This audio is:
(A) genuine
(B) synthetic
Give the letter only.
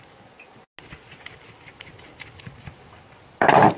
A